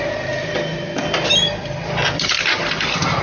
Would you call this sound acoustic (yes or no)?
yes